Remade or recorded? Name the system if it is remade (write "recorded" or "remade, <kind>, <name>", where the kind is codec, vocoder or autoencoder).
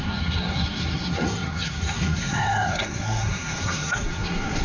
remade, codec, SNAC